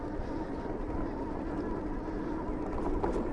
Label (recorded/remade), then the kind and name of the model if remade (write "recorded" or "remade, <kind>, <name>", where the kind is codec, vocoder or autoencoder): recorded